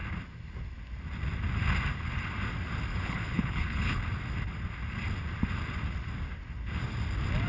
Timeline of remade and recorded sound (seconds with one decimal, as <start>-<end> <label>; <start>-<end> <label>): 0.0-2.9 recorded; 2.9-4.0 remade; 4.0-7.5 recorded